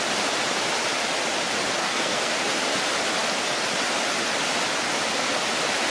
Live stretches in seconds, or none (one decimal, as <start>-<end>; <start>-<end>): 0.0-1.8; 2.3-5.9